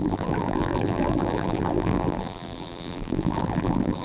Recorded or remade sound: remade